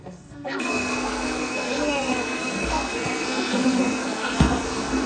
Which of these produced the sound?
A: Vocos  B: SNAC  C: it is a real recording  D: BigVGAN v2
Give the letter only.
B